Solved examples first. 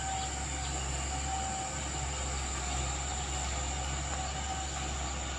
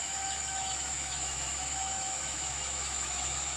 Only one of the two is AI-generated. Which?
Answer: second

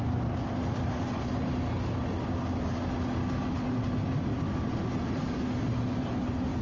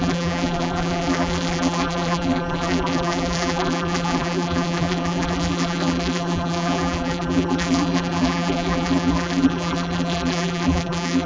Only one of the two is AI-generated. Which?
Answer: second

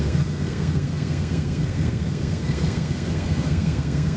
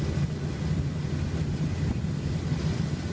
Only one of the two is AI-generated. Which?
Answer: first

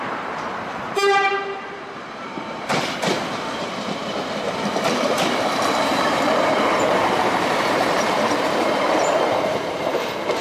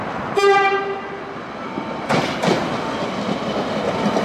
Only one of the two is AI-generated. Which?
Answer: first